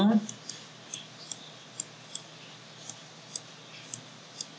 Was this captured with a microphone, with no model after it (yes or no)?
yes